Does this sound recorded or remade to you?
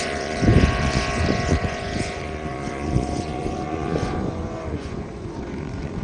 remade